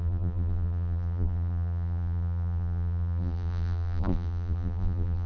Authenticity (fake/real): fake